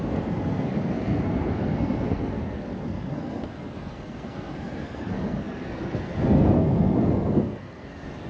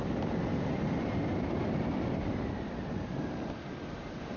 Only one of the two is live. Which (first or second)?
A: second